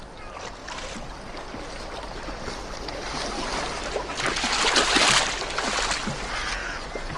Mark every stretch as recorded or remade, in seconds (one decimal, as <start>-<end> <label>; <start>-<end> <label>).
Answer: 0.0-6.6 recorded; 6.6-7.2 remade